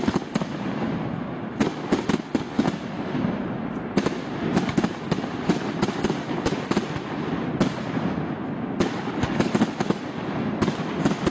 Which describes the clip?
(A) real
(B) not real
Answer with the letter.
A